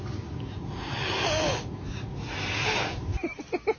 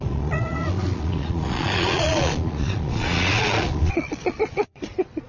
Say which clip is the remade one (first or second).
second